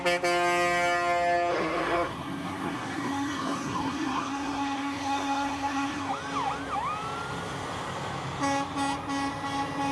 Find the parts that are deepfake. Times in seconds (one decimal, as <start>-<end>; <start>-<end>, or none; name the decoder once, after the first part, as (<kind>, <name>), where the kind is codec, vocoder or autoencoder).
1.5-6.1 (codec, SNAC)